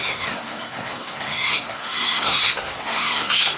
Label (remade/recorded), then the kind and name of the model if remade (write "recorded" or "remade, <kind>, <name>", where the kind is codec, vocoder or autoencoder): remade, codec, SNAC